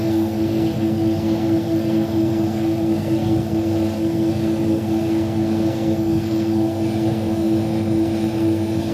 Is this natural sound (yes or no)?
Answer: no